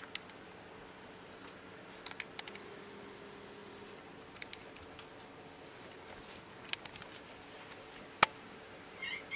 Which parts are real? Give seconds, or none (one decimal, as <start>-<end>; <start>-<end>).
0.0-9.4